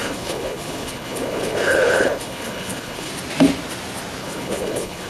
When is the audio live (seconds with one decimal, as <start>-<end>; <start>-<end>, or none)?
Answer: 3.1-4.2

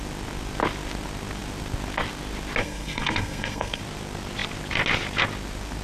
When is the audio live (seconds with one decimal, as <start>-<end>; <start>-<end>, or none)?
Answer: 0.0-2.6; 3.8-5.8

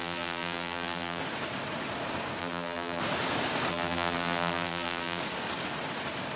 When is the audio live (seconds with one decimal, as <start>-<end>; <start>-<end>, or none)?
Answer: 1.2-2.4; 3.0-3.7; 5.2-6.4

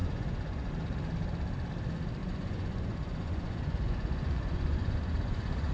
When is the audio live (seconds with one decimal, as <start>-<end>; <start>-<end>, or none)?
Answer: 0.7-2.2

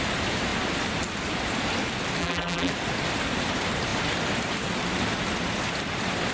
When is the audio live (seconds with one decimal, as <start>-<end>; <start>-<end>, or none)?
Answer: 0.0-2.2; 2.7-6.3

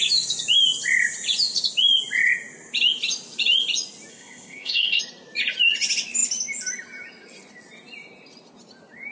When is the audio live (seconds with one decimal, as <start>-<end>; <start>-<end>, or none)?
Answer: 0.0-4.1; 5.0-9.1

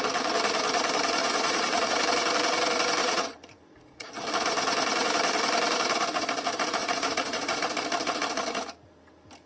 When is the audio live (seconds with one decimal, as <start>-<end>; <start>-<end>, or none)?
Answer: 0.0-1.2; 2.0-3.0; 4.1-6.8; 7.6-9.5